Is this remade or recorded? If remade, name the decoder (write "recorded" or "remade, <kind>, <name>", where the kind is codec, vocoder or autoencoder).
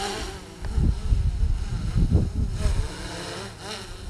recorded